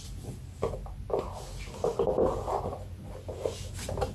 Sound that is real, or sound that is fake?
real